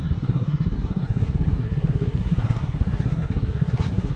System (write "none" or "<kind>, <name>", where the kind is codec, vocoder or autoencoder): codec, SNAC